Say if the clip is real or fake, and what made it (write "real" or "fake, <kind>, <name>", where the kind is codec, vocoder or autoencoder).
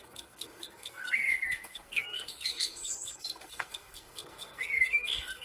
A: fake, codec, SNAC